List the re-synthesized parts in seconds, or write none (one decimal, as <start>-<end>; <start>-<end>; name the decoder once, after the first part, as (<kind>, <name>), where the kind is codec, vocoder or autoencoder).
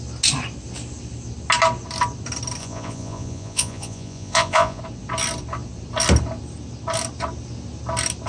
2.6-4.8 (vocoder, Vocos)